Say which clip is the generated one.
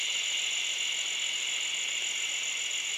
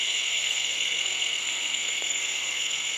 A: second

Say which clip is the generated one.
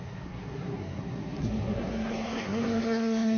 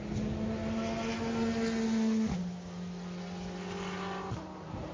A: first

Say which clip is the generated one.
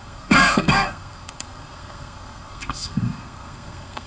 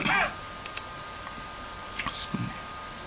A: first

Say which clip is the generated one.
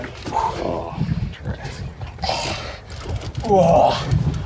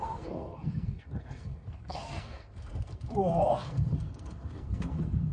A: second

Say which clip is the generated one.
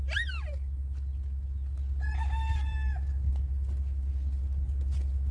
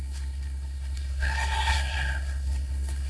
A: second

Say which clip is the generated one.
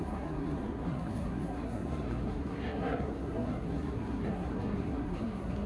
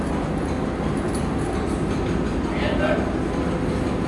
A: first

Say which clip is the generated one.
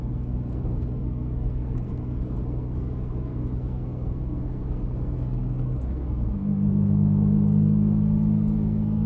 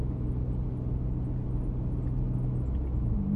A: first